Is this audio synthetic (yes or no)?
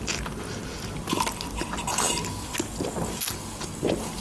no